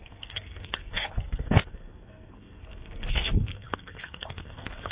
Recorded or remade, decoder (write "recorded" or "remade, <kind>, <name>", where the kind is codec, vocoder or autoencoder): remade, codec, SNAC